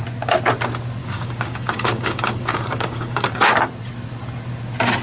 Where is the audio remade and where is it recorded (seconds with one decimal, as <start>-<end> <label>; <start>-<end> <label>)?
0.0-1.0 recorded; 1.0-3.3 remade; 3.3-5.0 recorded